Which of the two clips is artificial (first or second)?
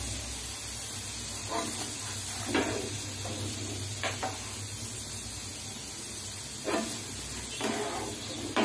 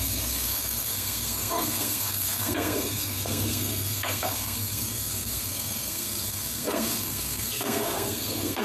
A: second